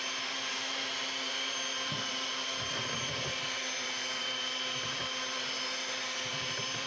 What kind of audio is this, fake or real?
fake